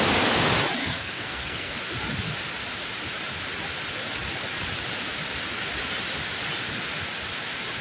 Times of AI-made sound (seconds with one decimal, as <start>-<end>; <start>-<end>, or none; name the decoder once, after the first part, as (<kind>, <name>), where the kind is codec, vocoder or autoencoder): 0.8-1.8 (codec, SNAC)